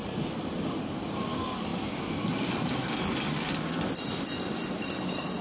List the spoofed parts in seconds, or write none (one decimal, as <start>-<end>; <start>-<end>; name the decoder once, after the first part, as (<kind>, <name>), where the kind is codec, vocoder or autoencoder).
none